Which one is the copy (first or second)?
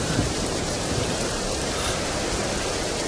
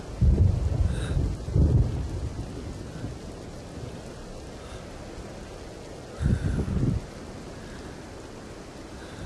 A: first